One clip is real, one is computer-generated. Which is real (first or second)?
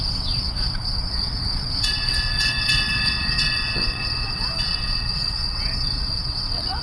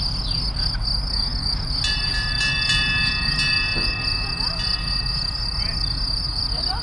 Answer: second